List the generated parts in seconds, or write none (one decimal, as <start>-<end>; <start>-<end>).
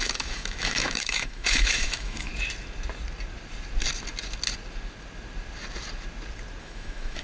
0.0-2.3; 6.6-7.2